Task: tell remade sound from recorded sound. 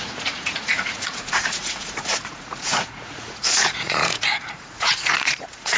remade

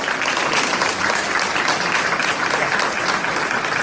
recorded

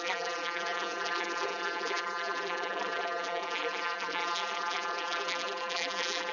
remade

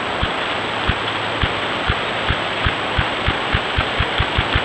recorded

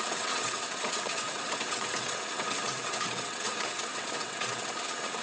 remade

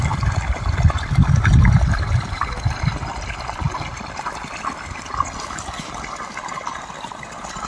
recorded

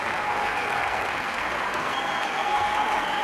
remade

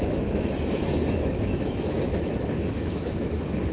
remade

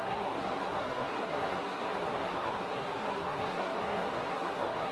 remade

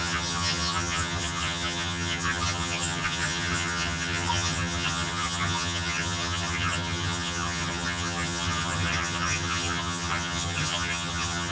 remade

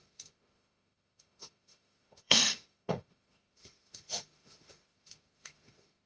remade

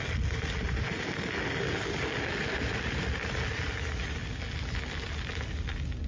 recorded